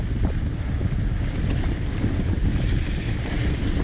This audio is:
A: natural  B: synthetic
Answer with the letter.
A